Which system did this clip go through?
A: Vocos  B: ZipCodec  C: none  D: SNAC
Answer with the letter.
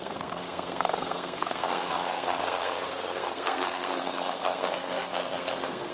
D